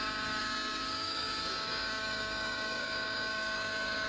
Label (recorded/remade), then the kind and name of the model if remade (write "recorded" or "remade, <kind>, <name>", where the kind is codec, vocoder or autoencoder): remade, codec, DAC